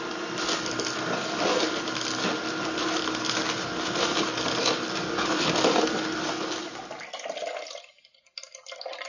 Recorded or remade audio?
recorded